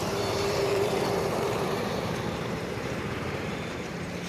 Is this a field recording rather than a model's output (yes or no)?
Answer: no